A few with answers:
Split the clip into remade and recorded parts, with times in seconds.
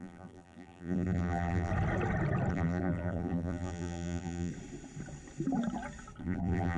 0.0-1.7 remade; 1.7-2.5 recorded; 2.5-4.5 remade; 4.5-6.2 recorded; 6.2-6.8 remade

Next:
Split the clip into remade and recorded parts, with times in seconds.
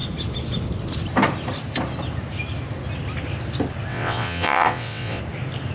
0.0-3.9 recorded; 3.9-5.2 remade; 5.2-5.7 recorded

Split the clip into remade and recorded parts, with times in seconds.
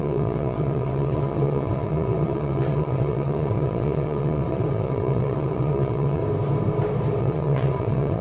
0.0-6.2 remade; 6.2-7.2 recorded; 7.2-8.2 remade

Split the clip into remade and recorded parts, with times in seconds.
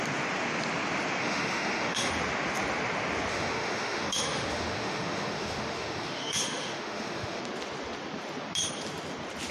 0.0-1.2 recorded; 1.2-2.1 remade; 2.1-3.3 recorded; 3.3-7.4 remade; 7.4-9.5 recorded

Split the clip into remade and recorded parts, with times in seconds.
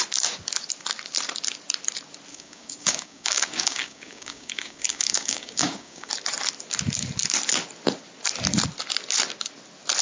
0.0-2.3 recorded; 2.3-6.1 remade; 6.1-10.0 recorded